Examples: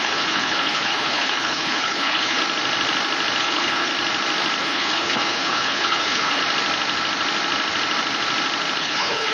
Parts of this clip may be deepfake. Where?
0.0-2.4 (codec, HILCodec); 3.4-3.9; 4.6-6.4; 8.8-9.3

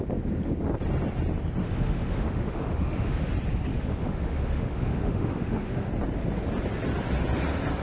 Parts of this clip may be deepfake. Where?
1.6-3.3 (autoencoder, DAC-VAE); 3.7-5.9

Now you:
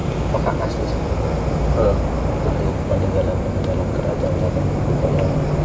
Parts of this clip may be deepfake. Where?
none

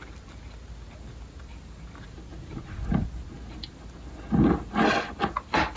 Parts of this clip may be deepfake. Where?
none

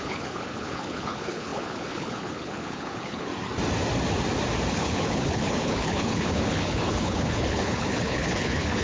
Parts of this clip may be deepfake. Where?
0.0-3.3 (codec, HILCodec); 4.7-8.8

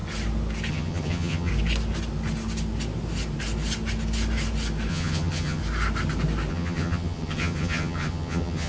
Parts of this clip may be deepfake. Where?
0.7-1.5 (vocoder, HiFi-GAN); 4.9-5.6; 6.5-8.7